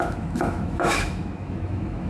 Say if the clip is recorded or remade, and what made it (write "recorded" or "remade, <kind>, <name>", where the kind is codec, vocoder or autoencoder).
remade, autoencoder, DAC-VAE